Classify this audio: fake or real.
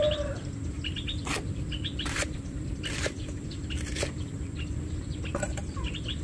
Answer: fake